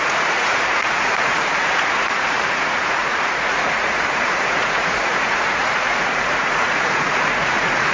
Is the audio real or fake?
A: fake